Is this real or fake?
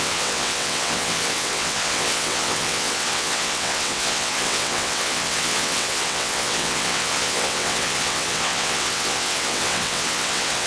fake